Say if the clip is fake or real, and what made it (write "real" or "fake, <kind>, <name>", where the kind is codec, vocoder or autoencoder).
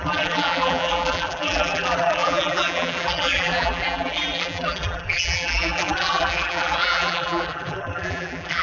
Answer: fake, vocoder, BigVGAN v2